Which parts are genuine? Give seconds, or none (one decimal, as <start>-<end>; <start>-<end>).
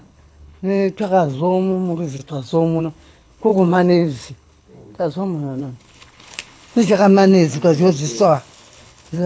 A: 2.2-2.8; 7.3-7.9